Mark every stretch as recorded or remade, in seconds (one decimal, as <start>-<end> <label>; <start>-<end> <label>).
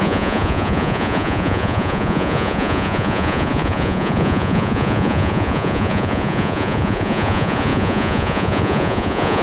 0.0-9.4 remade